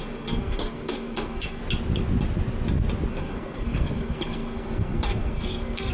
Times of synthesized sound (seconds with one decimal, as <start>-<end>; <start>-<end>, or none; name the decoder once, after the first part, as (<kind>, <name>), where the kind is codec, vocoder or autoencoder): 0.0-1.6 (codec, SNAC); 3.1-5.9